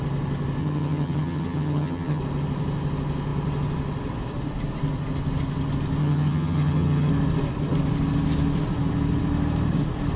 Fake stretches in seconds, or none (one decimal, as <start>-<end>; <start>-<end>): 0.6-2.2; 6.0-7.1